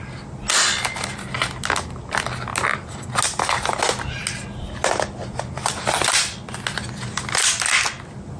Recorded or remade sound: recorded